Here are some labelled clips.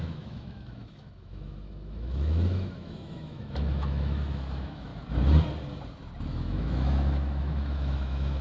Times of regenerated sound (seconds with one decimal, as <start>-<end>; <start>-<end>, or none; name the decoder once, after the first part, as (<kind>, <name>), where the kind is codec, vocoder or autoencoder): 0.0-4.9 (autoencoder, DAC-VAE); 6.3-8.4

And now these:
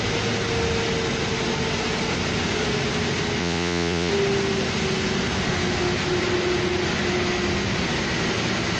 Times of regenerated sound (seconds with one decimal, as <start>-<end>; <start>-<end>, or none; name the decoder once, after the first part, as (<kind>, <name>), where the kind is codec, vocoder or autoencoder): 3.4-4.1 (vocoder, Vocos)

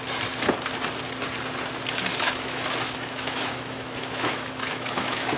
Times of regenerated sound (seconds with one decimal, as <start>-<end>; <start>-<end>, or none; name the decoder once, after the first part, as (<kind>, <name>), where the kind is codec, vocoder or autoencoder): 2.1-5.4 (autoencoder, DAC-VAE)

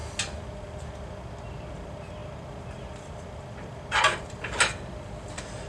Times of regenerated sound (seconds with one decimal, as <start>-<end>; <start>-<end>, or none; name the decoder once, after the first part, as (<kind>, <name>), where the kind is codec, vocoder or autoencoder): none

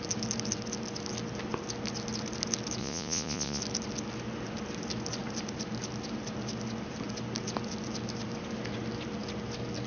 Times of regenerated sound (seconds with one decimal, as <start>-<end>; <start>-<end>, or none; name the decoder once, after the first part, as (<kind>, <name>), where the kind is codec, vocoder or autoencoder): 2.8-3.6 (vocoder, Vocos)